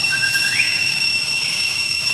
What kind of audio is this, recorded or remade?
remade